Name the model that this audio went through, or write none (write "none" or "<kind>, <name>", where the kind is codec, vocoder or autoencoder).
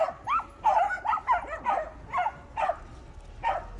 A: none